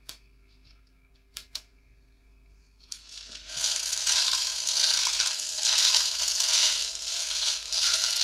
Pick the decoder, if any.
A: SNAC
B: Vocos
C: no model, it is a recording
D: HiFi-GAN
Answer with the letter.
A